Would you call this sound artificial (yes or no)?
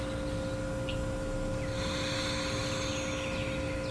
no